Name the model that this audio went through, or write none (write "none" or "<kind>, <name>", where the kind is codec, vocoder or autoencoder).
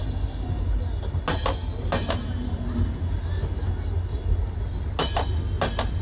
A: none